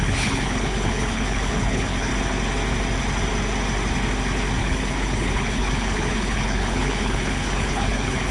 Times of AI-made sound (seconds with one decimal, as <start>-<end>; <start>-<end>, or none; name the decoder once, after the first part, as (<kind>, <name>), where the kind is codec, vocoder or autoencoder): 0.0-2.1 (codec, HILCodec); 4.6-8.3